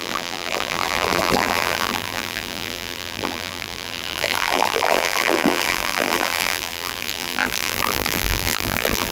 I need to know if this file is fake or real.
fake